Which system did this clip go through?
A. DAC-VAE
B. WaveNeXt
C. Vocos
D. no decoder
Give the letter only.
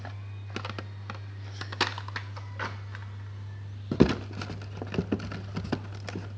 D